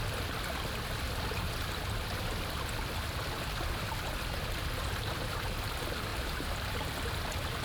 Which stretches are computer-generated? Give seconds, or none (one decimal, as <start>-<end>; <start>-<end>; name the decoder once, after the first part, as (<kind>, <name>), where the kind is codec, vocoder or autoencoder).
6.1-6.9 (vocoder, BigVGAN v2)